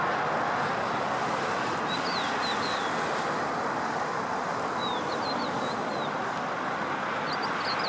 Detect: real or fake real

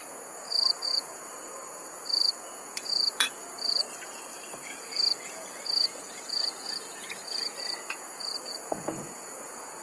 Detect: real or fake fake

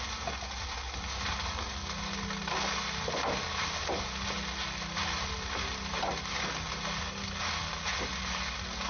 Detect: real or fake real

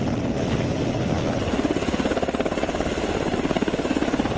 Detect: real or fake real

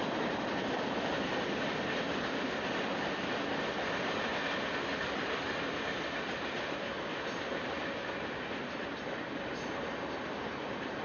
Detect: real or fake real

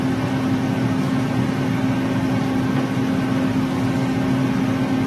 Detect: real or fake real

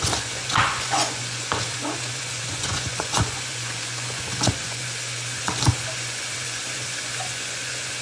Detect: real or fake fake